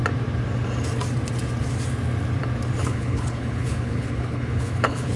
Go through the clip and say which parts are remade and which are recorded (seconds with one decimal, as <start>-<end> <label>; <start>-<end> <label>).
0.0-2.8 recorded; 2.8-5.2 remade